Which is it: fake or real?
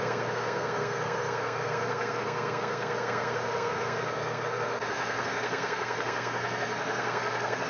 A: fake